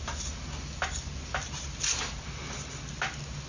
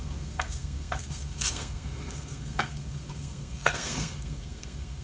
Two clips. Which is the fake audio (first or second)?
second